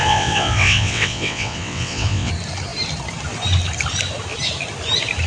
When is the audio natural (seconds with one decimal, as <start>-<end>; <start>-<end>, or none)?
2.3-5.3

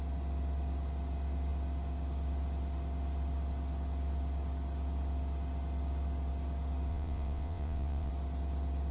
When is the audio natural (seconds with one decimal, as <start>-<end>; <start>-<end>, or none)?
0.0-6.9; 8.1-8.9

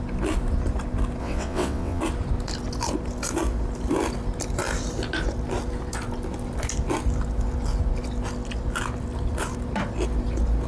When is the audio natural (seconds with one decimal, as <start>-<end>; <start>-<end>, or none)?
0.0-1.2; 2.0-10.7

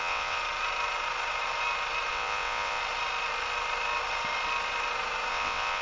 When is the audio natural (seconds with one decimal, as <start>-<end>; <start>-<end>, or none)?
0.4-2.1; 2.8-5.3

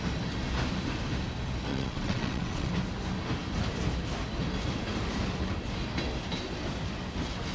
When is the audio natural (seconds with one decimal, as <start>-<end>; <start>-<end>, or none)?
0.0-1.7; 2.7-7.5

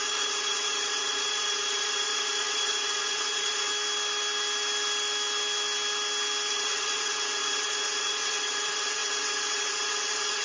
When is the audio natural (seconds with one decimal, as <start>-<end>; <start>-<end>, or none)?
3.7-6.5